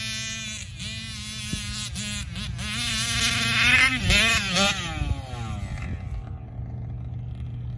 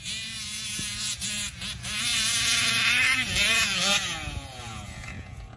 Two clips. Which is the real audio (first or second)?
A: first